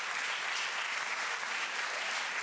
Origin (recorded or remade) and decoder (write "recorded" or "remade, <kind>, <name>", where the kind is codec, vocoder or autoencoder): remade, vocoder, BigVGAN v2